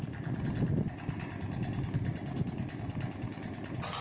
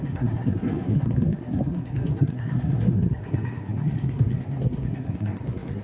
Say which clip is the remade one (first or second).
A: second